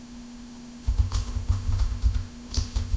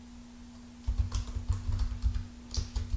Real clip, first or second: second